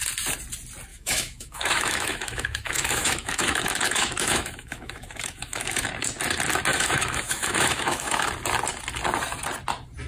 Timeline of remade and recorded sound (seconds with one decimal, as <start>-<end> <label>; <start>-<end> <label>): 0.0-0.9 recorded; 0.9-5.9 remade; 5.9-6.7 recorded; 6.7-8.3 remade; 8.3-10.1 recorded

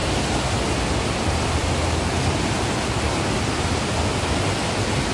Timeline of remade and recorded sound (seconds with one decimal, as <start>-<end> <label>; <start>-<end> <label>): 0.0-5.1 recorded

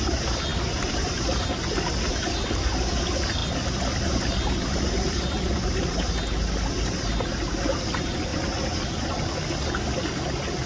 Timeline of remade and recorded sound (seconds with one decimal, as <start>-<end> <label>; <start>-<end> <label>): 0.0-0.5 recorded; 0.5-1.5 remade; 1.5-10.7 recorded

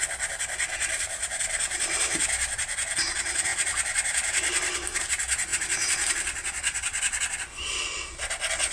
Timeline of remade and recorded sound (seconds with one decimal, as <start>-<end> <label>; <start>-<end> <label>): 0.0-8.7 recorded

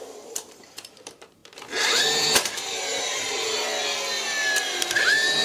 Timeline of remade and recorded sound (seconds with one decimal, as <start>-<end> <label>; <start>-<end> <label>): 0.0-3.7 remade; 3.7-4.6 recorded; 4.6-5.4 remade

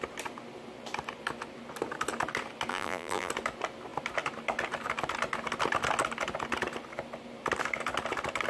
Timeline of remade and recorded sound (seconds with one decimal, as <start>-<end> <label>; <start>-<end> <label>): 0.0-2.7 recorded; 2.7-3.3 remade; 3.3-8.5 recorded